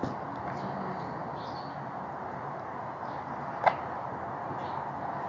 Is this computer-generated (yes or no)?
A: no